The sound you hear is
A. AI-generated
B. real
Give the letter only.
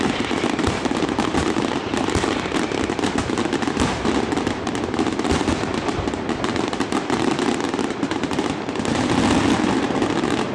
A